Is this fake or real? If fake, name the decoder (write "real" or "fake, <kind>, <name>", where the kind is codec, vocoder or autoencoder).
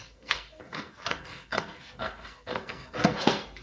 fake, codec, SNAC